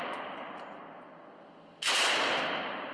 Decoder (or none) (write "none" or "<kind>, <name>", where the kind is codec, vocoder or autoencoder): none